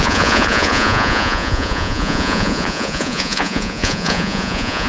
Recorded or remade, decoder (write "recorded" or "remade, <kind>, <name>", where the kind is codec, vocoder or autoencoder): remade, vocoder, Vocos